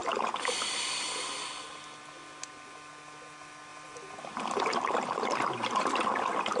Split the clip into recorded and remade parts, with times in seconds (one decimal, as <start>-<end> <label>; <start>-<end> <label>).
0.0-3.7 recorded; 3.7-4.7 remade; 4.7-6.6 recorded